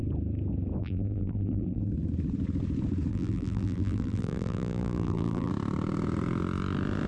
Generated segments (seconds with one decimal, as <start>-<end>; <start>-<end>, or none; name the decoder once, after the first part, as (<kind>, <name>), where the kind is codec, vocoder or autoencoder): 0.8-1.9 (vocoder, BigVGAN v2); 3.1-5.5

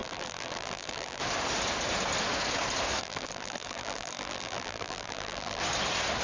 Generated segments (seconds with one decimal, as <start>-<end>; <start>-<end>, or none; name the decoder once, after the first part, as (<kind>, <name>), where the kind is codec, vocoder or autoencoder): 0.0-1.2 (vocoder, BigVGAN v2); 3.0-5.6

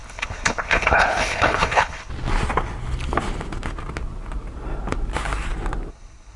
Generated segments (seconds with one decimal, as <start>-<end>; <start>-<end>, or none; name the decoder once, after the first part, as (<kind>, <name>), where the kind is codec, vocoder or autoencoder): 0.0-2.1 (codec, HILCodec); 5.9-6.4

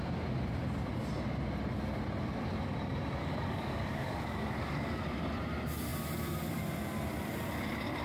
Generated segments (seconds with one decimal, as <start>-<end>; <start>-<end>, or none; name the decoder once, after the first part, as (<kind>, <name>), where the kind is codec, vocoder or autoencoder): 3.2-5.0 (codec, DAC)